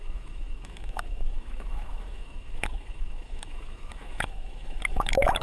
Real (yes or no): no